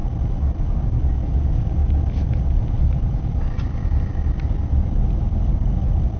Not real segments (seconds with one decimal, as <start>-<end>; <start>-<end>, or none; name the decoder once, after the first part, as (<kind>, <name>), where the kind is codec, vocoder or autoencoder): none